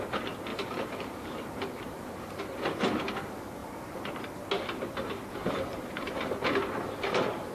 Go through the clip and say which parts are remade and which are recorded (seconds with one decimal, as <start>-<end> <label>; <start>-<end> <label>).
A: 0.0-0.5 recorded; 0.5-2.4 remade; 2.4-3.6 recorded; 3.6-4.1 remade; 4.1-5.7 recorded; 5.7-6.3 remade; 6.3-7.5 recorded